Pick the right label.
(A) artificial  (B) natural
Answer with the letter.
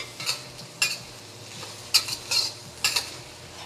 B